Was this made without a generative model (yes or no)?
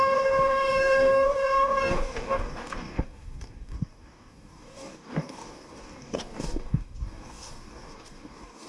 no